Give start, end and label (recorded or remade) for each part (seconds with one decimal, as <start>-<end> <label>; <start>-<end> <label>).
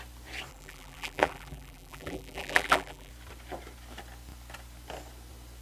0.0-0.5 recorded; 0.5-3.1 remade; 3.1-5.6 recorded